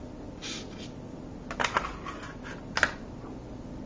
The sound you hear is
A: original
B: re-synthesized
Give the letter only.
A